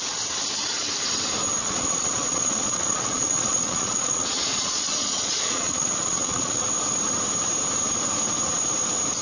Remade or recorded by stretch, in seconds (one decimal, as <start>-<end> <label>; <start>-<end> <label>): 0.0-1.6 recorded; 1.6-6.6 remade; 6.6-9.2 recorded